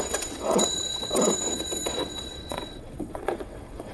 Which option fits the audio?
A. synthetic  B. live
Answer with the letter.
A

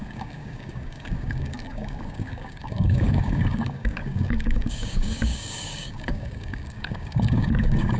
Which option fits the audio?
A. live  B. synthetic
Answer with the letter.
B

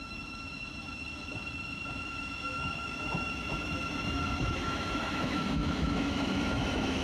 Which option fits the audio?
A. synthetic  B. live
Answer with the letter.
A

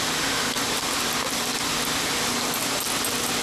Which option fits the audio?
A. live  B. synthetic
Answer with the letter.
A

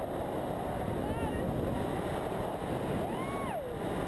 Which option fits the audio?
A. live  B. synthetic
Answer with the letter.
A